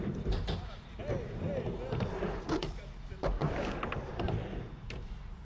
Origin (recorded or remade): recorded